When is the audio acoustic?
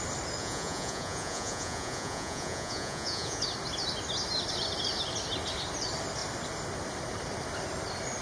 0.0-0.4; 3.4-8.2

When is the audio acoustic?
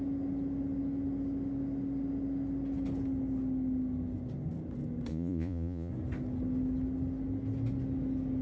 0.0-5.1; 5.9-8.4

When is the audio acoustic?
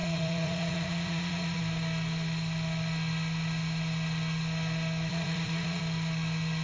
1.6-5.1; 5.8-6.6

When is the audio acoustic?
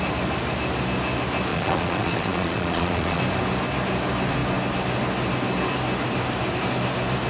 0.0-1.5; 3.2-7.3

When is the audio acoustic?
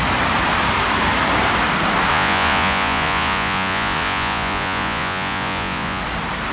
0.0-2.1; 6.0-6.5